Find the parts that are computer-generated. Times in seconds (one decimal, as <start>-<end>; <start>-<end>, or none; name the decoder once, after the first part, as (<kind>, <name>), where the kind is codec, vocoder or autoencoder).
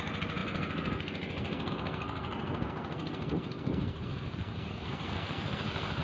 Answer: 0.0-6.0 (codec, SNAC)